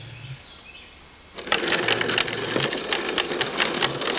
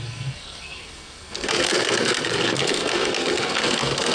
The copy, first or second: second